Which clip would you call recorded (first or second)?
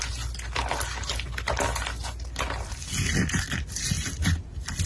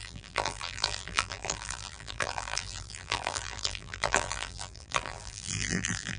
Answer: first